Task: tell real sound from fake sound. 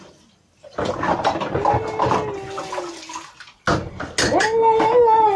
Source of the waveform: real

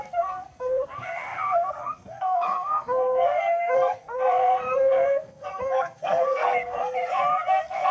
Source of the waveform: fake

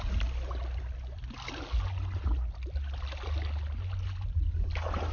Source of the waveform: real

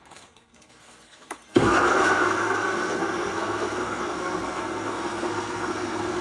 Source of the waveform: fake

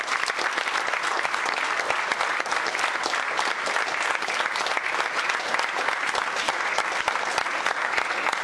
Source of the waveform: real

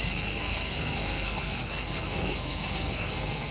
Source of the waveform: fake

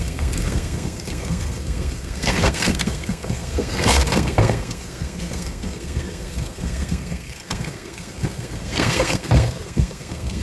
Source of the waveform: fake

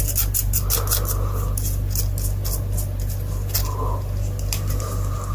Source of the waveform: real